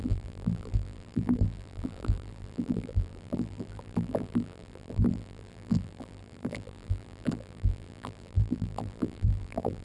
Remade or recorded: remade